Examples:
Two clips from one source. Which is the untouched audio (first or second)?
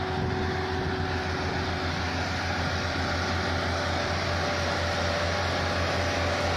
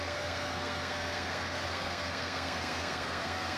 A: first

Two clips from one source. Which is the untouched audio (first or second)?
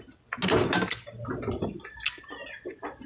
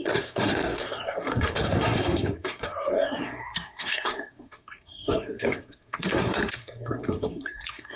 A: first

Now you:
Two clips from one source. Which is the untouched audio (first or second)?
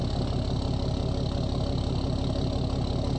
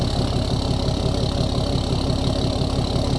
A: first